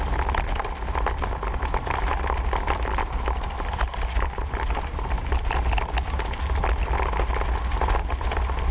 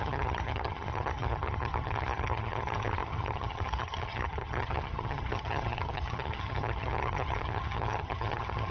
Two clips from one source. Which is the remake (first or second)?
second